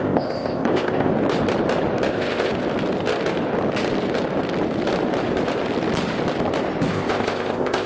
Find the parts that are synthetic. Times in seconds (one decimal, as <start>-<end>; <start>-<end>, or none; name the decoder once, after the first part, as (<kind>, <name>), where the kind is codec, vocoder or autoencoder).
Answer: 0.0-1.1 (codec, ZipCodec); 2.1-2.5; 6.9-7.9